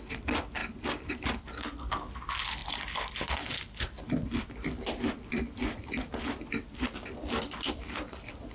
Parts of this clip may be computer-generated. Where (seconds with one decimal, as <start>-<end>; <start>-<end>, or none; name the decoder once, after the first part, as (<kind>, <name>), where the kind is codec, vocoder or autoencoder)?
2.6-7.7 (vocoder, BigVGAN v2)